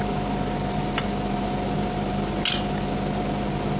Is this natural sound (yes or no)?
yes